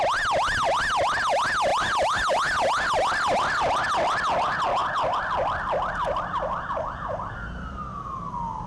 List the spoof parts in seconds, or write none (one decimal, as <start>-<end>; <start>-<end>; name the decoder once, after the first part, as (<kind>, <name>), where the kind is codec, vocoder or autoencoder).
1.7-2.3 (vocoder, BigVGAN v2); 4.8-6.8